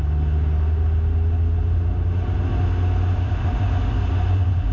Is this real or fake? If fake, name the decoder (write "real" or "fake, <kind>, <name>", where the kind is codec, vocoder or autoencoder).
real